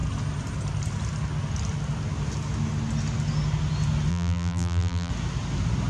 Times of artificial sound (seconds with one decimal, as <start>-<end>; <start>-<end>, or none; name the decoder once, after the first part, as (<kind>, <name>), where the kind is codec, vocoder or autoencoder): 4.1-5.1 (vocoder, BigVGAN v2)